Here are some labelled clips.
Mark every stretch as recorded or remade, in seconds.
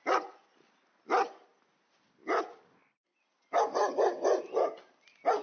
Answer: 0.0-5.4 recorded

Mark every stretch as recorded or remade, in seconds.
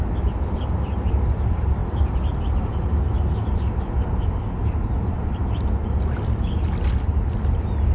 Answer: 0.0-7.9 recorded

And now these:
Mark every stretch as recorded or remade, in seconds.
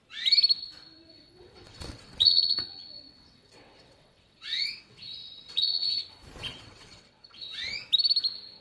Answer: 0.0-1.1 recorded; 1.1-6.0 remade; 6.0-6.4 recorded; 6.4-7.6 remade; 7.6-8.6 recorded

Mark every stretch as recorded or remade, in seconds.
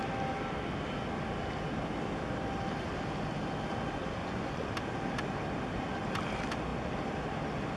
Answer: 0.0-4.2 recorded; 4.2-4.7 remade; 4.7-7.8 recorded